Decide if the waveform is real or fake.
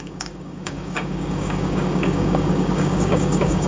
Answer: fake